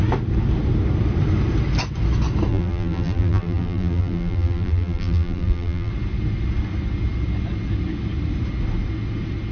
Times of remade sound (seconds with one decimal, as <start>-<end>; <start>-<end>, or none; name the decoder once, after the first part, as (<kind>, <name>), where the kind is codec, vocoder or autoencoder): 2.5-5.9 (vocoder, BigVGAN v2)